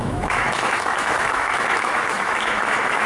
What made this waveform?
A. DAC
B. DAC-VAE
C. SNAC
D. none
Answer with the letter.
B